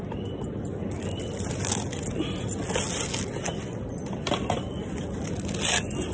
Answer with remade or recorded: recorded